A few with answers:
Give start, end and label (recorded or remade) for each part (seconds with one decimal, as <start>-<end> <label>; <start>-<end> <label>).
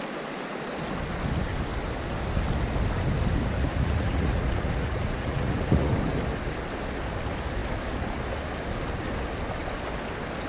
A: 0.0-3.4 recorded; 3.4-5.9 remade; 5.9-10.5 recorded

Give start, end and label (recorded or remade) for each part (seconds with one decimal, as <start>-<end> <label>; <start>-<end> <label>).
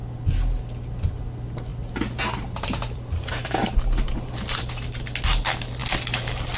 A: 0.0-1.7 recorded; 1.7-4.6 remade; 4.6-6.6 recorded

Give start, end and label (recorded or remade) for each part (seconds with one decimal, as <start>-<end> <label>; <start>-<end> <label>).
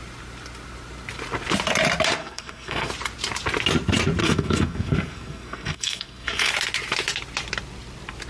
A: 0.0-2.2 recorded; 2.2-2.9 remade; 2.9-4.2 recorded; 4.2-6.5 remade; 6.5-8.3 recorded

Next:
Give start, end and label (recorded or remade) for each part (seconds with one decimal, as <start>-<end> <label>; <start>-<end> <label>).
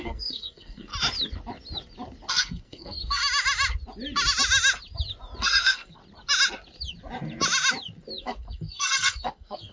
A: 0.0-0.9 remade; 0.9-2.3 recorded; 2.3-3.2 remade; 3.2-5.4 recorded; 5.4-6.0 remade; 6.0-8.2 recorded; 8.2-9.7 remade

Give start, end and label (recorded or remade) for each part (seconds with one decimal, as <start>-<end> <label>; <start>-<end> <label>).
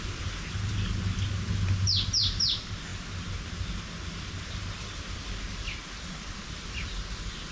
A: 0.0-7.5 recorded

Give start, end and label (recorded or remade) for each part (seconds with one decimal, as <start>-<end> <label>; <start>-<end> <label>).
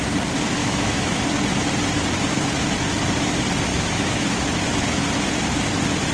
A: 0.0-0.6 recorded; 0.6-1.2 remade; 1.2-3.7 recorded; 3.7-4.4 remade; 4.4-6.1 recorded